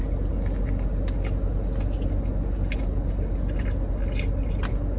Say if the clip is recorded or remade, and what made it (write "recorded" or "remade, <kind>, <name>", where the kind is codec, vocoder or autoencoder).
recorded